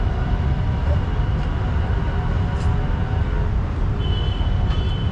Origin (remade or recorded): recorded